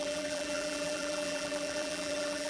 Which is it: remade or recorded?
remade